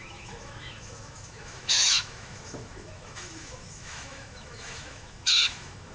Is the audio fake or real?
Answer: fake